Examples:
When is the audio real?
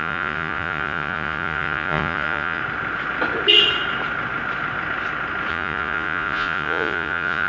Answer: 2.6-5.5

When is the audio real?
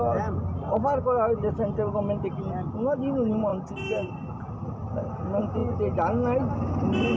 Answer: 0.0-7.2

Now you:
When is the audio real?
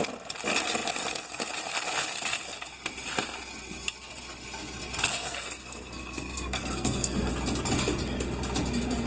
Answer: 0.0-5.1; 7.3-9.1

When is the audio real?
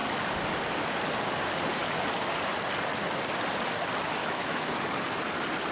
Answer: 0.0-4.2; 4.7-5.7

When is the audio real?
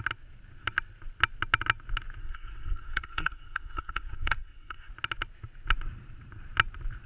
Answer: 0.0-2.2; 4.9-7.1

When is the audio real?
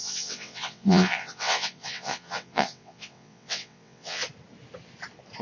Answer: 4.2-5.4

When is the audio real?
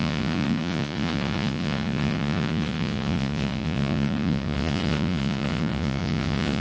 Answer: none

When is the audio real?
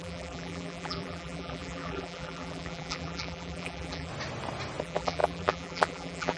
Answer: 4.1-4.8